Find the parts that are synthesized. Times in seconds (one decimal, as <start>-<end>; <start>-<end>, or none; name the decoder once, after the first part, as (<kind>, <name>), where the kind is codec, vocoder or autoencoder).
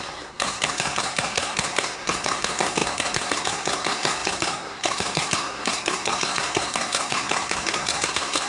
0.0-8.5 (codec, SNAC)